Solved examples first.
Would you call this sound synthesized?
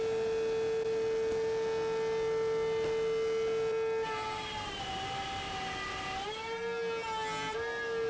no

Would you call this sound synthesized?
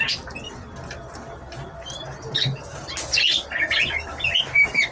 no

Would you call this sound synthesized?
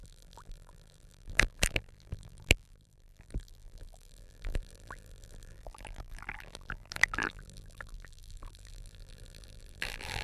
yes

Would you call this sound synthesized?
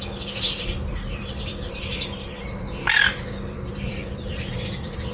yes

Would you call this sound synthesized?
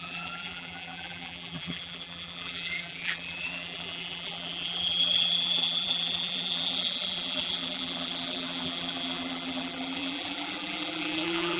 yes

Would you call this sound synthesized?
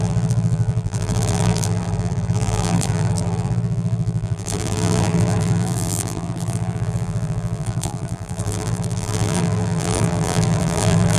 yes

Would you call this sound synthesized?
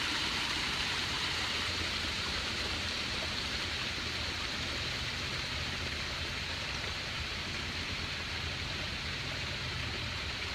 yes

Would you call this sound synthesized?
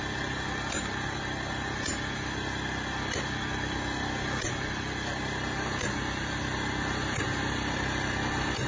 no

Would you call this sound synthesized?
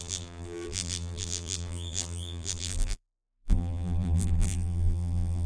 yes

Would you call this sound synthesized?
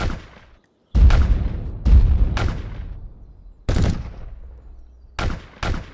no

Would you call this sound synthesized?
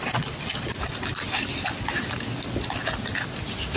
no